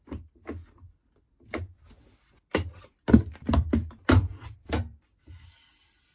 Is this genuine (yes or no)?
yes